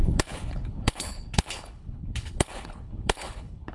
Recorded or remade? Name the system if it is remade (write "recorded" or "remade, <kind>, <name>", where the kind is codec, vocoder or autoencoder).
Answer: remade, codec, HILCodec